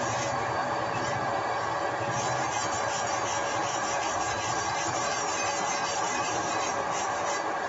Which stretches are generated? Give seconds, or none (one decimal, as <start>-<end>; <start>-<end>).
0.6-1.4; 3.5-5.1; 5.8-7.7